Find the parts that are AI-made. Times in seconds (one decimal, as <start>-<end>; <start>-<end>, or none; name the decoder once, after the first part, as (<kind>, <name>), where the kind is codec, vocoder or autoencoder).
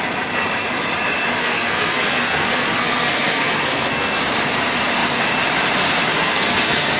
1.4-4.2 (codec, SNAC); 6.2-7.0